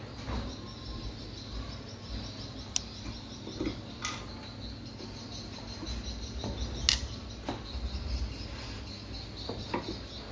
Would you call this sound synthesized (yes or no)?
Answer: no